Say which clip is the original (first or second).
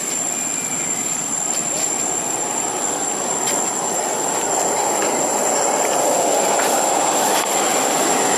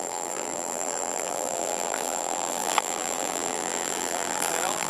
first